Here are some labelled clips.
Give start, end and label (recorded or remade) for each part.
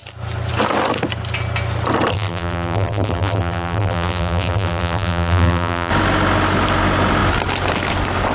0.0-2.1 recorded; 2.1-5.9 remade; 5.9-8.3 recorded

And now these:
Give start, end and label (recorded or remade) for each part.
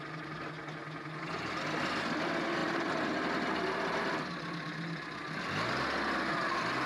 0.0-6.9 recorded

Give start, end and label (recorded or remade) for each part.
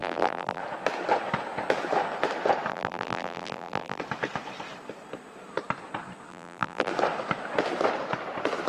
0.0-0.6 remade; 0.6-2.7 recorded; 2.7-4.0 remade; 4.0-6.3 recorded; 6.3-6.9 remade; 6.9-8.7 recorded